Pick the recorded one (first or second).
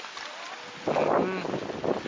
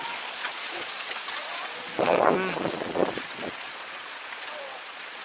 first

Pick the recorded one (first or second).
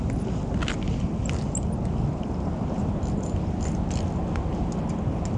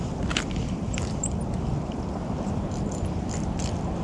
first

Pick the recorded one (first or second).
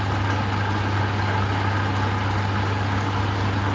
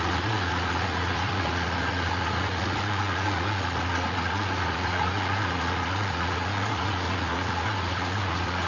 first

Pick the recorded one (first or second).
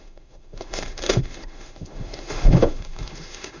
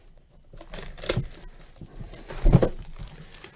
second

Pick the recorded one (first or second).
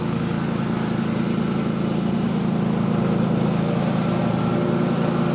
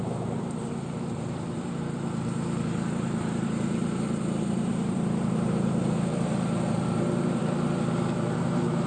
first